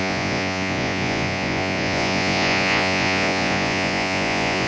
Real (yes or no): no